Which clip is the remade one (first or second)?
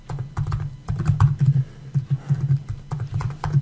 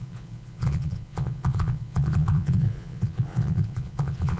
second